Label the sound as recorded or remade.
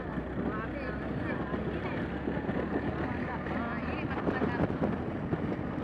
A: recorded